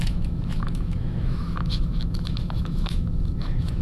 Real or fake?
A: fake